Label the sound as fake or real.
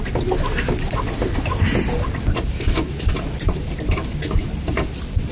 real